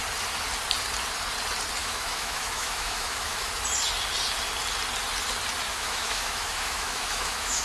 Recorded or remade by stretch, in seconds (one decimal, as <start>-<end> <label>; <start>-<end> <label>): 0.0-1.8 recorded; 1.8-3.5 remade; 3.5-5.7 recorded; 5.7-7.6 remade